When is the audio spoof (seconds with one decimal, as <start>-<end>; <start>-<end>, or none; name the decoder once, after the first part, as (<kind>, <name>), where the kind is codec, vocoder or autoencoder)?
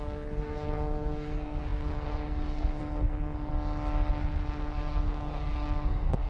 0.0-3.5 (codec, SNAC); 4.1-6.3